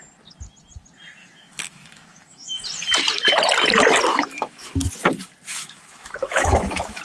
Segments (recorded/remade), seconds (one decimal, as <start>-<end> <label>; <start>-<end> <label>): 0.0-1.2 recorded; 1.2-2.6 remade; 2.6-4.1 recorded; 4.1-4.7 remade; 4.7-5.5 recorded; 5.5-7.0 remade